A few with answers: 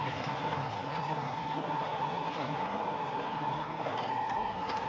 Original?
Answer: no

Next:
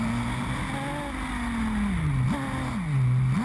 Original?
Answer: yes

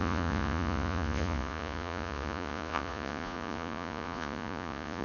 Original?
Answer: no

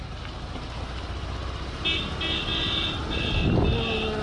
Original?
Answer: yes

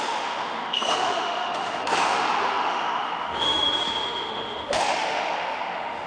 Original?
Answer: no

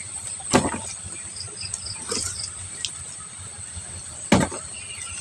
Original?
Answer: yes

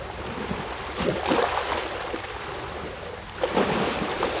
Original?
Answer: yes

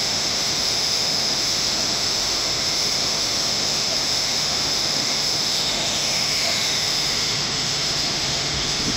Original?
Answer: no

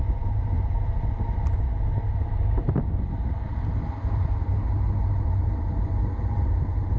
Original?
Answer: yes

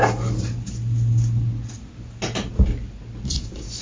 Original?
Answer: yes